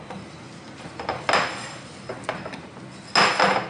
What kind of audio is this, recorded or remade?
recorded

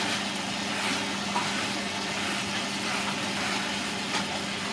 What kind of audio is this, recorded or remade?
recorded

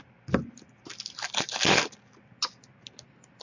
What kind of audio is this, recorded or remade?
recorded